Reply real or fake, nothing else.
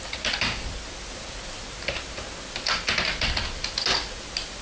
real